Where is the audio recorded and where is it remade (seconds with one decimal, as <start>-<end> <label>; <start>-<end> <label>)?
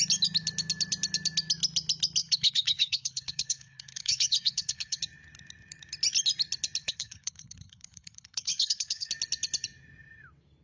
0.0-2.2 recorded; 2.2-5.0 remade; 5.0-6.8 recorded; 6.8-9.1 remade; 9.1-10.6 recorded